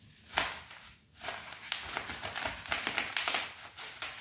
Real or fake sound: real